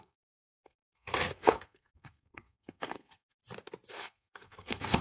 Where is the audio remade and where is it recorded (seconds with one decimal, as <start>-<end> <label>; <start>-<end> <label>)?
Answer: 0.0-3.4 remade; 3.4-3.9 recorded; 3.9-5.0 remade